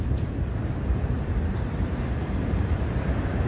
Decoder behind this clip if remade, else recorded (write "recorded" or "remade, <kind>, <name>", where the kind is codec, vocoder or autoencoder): remade, vocoder, BigVGAN v2